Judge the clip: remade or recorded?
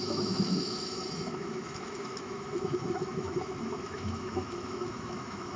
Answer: remade